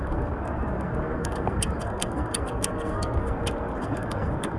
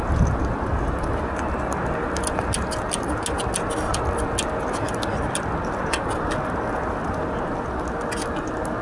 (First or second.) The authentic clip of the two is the second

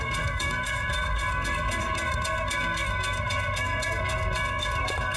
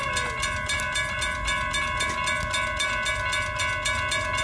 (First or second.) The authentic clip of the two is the second